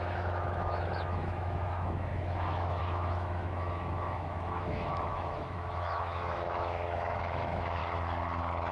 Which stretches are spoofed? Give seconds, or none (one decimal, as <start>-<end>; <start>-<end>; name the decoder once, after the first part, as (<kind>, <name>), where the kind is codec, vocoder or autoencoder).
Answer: 0.0-7.8 (autoencoder, DAC-VAE)